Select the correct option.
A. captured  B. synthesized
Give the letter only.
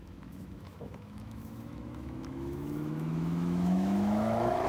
B